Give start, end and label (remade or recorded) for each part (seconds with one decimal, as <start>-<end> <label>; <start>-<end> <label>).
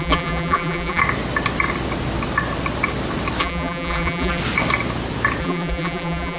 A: 0.0-1.0 remade; 1.0-3.4 recorded; 3.4-4.4 remade; 4.4-5.4 recorded; 5.4-6.4 remade